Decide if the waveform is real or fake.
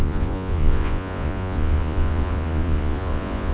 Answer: fake